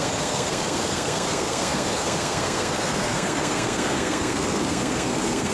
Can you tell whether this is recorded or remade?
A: remade